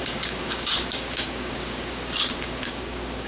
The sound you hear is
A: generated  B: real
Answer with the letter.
A